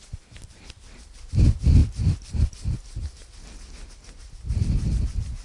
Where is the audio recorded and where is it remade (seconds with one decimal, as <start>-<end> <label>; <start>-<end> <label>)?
0.0-1.8 remade; 1.8-4.5 recorded; 4.5-5.4 remade